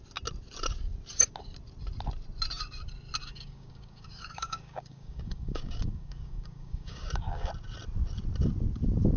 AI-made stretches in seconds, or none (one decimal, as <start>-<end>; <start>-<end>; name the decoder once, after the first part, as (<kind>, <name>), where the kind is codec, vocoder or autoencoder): 3.2-7.5 (codec, DAC)